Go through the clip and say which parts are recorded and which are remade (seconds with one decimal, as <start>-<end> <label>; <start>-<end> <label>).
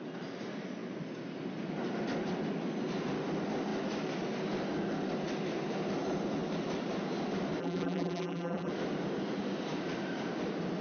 0.0-7.6 recorded; 7.6-8.7 remade; 8.7-10.8 recorded